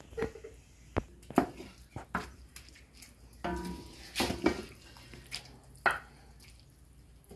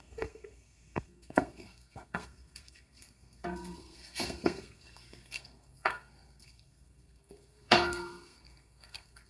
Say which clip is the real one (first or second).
first